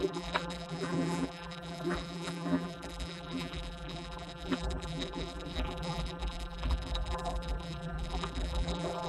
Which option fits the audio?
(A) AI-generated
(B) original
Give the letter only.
A